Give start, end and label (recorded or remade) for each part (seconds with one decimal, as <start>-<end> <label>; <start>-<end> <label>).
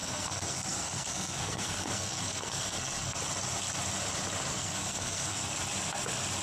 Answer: 0.0-3.2 remade; 3.2-4.5 recorded; 4.5-5.5 remade; 5.5-6.4 recorded